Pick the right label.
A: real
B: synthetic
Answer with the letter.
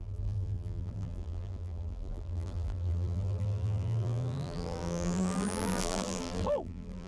B